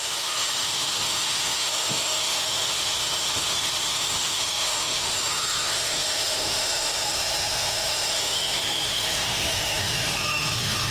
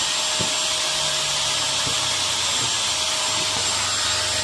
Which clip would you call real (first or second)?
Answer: second